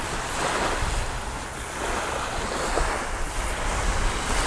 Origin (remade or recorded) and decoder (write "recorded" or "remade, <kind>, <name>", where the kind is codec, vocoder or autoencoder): recorded